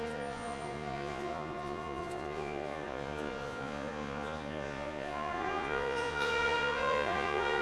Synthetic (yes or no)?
yes